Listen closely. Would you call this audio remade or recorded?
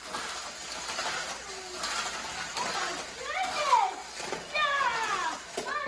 recorded